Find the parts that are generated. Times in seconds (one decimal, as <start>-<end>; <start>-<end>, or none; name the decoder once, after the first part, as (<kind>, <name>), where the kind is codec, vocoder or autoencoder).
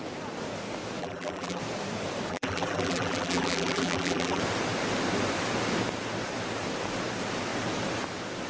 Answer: 1.0-1.6 (vocoder, BigVGAN v2); 2.3-4.4